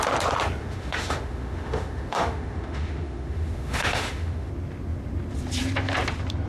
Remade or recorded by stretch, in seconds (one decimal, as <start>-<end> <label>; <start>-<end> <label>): 0.0-0.6 recorded; 0.6-4.5 remade; 4.5-6.5 recorded